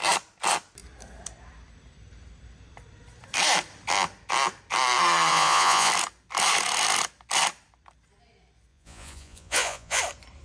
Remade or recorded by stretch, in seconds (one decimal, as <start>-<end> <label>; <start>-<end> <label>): 0.0-5.3 recorded; 5.3-5.9 remade; 5.9-8.7 recorded; 8.7-10.0 remade; 10.0-10.4 recorded